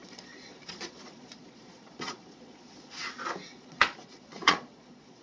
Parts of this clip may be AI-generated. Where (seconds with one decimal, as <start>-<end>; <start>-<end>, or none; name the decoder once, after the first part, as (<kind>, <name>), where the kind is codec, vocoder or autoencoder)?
0.0-3.1 (vocoder, Vocos); 3.5-5.2